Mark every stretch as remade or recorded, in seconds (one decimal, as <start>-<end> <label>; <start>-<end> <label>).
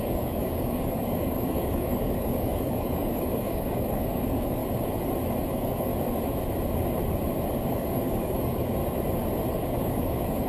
0.0-4.6 remade; 4.6-5.5 recorded; 5.5-5.9 remade; 5.9-7.5 recorded; 7.5-8.8 remade; 8.8-9.5 recorded; 9.5-10.5 remade